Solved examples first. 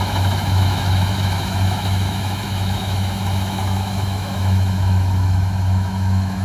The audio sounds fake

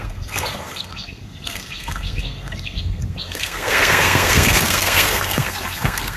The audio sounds fake